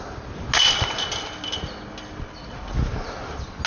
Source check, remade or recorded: recorded